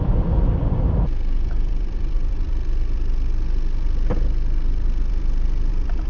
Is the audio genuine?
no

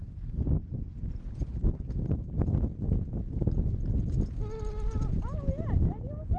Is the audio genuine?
yes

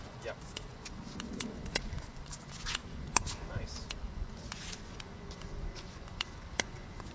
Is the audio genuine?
no